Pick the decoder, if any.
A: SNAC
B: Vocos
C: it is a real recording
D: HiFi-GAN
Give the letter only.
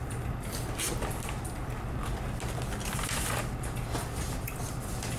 C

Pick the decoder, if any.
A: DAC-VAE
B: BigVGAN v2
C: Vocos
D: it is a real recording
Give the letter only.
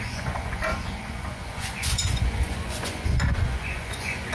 C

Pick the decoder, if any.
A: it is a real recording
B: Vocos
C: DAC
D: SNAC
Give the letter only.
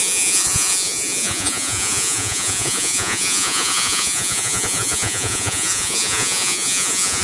B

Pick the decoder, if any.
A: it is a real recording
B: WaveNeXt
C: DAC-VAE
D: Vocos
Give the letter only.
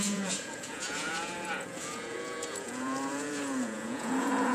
D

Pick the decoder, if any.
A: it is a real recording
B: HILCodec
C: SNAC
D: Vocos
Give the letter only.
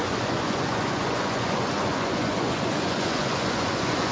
D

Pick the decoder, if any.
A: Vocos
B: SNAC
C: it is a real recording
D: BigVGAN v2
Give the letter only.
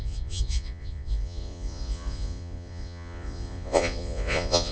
A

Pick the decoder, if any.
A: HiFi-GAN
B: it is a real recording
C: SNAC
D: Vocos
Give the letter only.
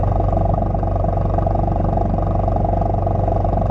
B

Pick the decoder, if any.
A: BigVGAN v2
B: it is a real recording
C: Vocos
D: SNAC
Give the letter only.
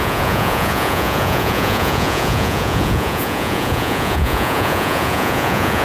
C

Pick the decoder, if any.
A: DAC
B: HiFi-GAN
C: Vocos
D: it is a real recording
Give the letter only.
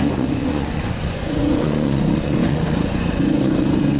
C